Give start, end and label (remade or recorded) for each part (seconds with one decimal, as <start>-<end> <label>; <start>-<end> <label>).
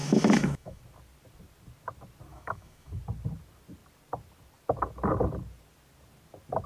0.0-0.8 remade; 0.8-2.3 recorded; 2.3-2.9 remade; 2.9-6.7 recorded